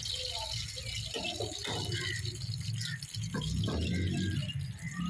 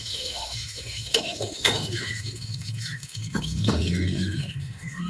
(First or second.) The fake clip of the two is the second